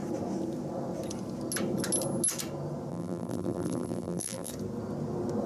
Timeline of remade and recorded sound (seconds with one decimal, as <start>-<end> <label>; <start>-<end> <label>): 0.0-2.9 recorded; 2.9-4.5 remade; 4.5-5.5 recorded